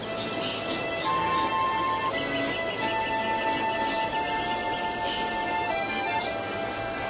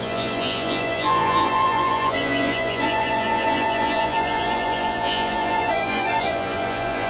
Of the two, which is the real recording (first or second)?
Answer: first